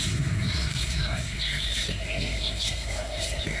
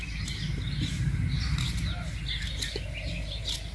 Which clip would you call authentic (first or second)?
second